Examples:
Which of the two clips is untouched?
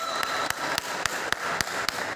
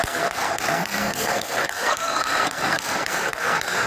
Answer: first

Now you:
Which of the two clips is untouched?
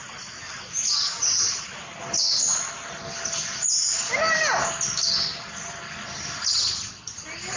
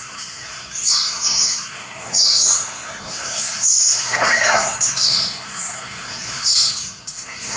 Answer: first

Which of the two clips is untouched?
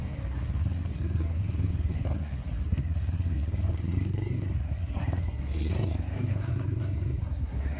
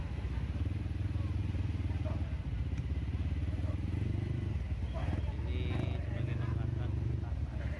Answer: second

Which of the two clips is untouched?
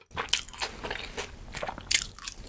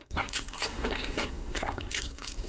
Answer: first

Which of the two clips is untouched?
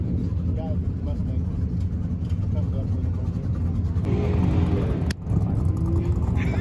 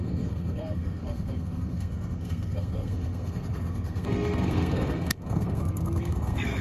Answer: first